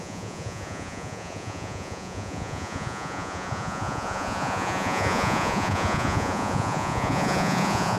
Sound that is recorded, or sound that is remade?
remade